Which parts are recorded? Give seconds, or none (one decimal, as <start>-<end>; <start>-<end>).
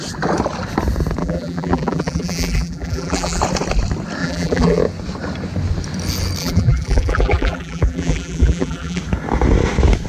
0.0-1.2; 3.4-4.2; 4.8-6.4; 9.0-10.1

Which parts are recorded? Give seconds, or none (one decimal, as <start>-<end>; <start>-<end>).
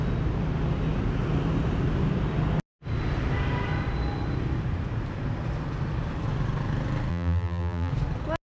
0.0-7.1; 7.9-8.5